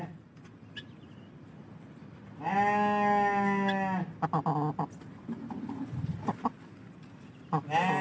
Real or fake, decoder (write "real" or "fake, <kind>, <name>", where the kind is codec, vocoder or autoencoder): real